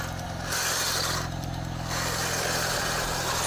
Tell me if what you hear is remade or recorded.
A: recorded